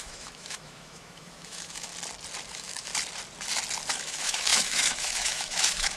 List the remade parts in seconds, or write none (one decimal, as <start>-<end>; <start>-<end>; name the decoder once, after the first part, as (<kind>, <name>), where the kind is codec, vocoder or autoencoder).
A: 0.0-1.9 (autoencoder, DAC-VAE); 2.5-2.9; 3.9-6.0